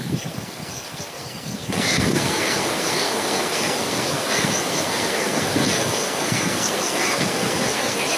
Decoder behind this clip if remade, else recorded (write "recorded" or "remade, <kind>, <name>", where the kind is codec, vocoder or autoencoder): remade, codec, SNAC